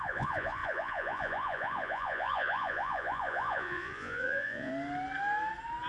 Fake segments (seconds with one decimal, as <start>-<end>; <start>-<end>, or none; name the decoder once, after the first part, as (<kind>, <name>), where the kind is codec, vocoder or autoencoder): 0.0-4.7 (vocoder, Vocos)